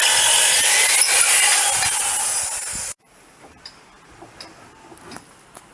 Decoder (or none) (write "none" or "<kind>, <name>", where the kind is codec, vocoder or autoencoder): none